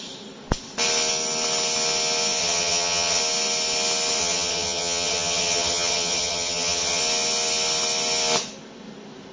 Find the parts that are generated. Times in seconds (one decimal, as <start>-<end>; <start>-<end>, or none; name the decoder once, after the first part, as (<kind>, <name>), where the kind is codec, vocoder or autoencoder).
2.4-3.2 (vocoder, HiFi-GAN); 4.2-7.0